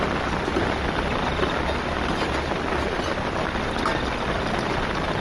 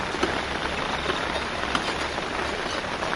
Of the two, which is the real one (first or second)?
second